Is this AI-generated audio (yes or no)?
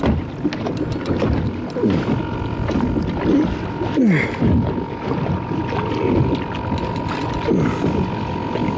no